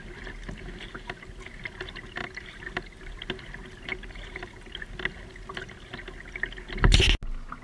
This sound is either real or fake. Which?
real